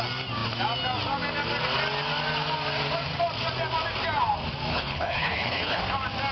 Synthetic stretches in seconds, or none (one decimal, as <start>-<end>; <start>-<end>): 4.7-5.8